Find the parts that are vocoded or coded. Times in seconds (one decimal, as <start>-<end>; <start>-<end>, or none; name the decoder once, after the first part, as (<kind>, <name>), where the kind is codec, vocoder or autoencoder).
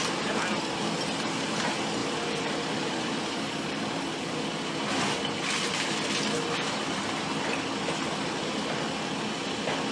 2.0-4.9 (vocoder, BigVGAN v2)